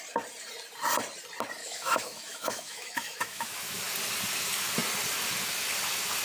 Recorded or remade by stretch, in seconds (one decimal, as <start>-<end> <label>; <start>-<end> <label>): 0.0-1.6 recorded; 1.6-3.8 remade; 3.8-6.2 recorded